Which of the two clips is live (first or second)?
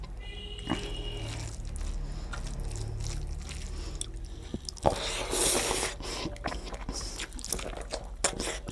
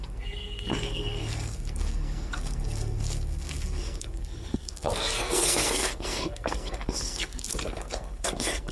first